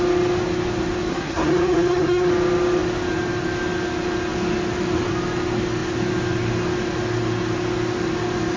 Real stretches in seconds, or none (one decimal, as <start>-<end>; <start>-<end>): 0.0-1.1; 2.3-8.6